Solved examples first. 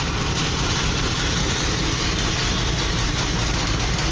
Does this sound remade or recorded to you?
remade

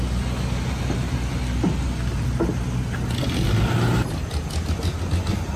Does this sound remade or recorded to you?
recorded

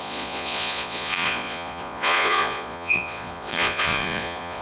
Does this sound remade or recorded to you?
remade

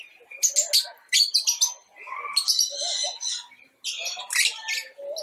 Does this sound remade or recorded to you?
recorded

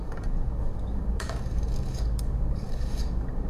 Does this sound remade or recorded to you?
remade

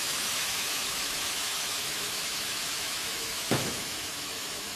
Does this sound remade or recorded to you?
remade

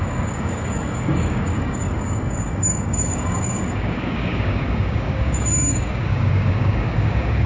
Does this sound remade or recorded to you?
remade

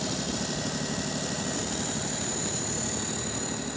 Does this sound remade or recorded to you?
recorded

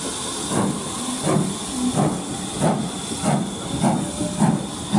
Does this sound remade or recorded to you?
recorded